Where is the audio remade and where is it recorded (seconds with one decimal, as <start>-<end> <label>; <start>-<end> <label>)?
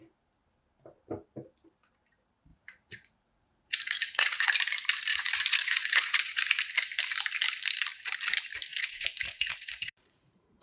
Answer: 0.0-2.5 recorded; 2.5-4.5 remade; 4.5-5.1 recorded; 5.1-6.6 remade; 6.6-8.7 recorded; 8.7-10.6 remade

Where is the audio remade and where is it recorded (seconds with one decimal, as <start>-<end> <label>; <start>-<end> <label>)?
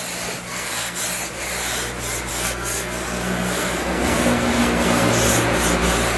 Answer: 0.0-0.5 recorded; 0.5-1.0 remade; 1.0-2.3 recorded; 2.3-5.1 remade; 5.1-6.2 recorded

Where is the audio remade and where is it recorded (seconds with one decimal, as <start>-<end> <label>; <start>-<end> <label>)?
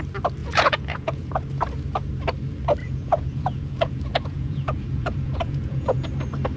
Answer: 0.0-0.4 recorded; 0.4-1.4 remade; 1.4-2.8 recorded; 2.8-6.1 remade; 6.1-6.6 recorded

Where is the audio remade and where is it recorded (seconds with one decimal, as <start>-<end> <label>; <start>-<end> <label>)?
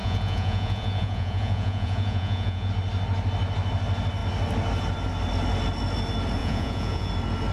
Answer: 0.0-2.7 remade; 2.7-6.4 recorded; 6.4-7.1 remade; 7.1-7.5 recorded